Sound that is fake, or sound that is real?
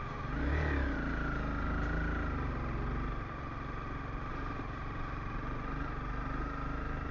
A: real